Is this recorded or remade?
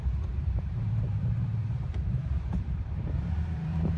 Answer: remade